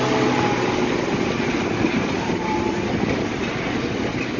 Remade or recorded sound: recorded